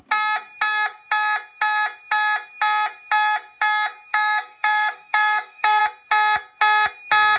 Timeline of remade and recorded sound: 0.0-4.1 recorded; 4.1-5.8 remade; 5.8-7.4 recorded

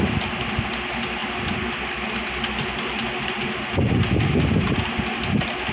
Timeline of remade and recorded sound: 0.0-5.7 recorded

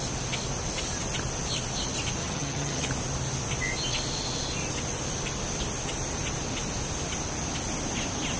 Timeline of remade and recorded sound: 0.0-2.2 recorded; 2.2-2.9 remade; 2.9-8.4 recorded

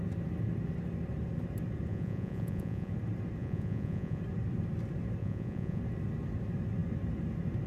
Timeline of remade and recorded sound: 0.0-1.9 recorded; 1.9-2.9 remade; 2.9-3.4 recorded; 3.4-4.2 remade; 4.2-5.2 recorded; 5.2-5.8 remade; 5.8-7.7 recorded

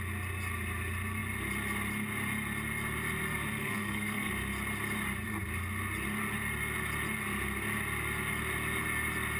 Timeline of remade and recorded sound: 0.0-3.6 recorded; 3.6-4.3 remade; 4.3-9.4 recorded

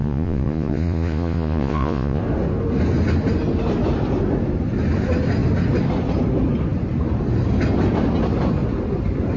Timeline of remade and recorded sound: 0.0-2.2 remade; 2.2-9.4 recorded

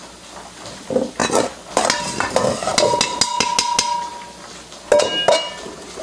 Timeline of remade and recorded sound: 0.0-6.0 recorded